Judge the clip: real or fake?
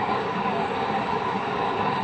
fake